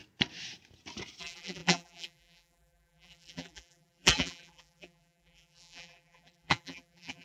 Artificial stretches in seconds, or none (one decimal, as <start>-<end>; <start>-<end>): 1.2-7.2